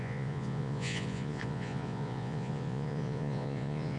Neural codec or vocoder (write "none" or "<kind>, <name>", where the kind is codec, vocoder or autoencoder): vocoder, Vocos